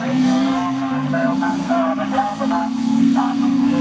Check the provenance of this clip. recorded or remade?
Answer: remade